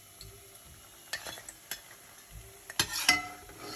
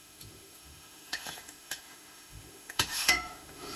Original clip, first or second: first